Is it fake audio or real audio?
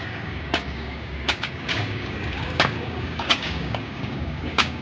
fake